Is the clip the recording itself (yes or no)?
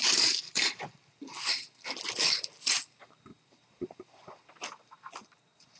no